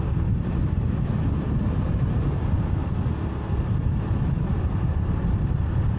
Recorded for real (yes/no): yes